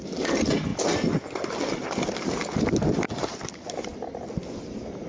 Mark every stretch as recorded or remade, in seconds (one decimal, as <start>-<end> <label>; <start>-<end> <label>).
0.0-5.1 recorded